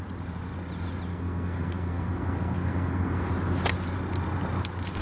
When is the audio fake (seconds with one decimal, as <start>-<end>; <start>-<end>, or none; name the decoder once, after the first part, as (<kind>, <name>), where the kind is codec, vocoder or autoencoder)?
1.1-3.3 (codec, SNAC)